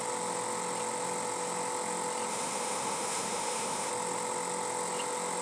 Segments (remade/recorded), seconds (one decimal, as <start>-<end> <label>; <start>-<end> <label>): 0.0-2.3 recorded; 2.3-3.9 remade; 3.9-5.4 recorded